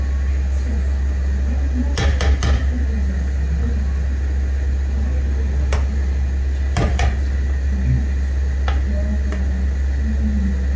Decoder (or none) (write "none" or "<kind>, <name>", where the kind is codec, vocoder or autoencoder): none